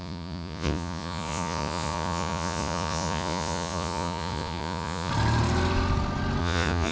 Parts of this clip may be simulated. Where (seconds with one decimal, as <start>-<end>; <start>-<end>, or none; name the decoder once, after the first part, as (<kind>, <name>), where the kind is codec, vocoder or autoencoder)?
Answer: 0.0-5.1 (vocoder, Vocos); 6.4-6.9